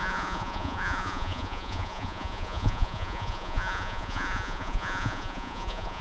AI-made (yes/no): yes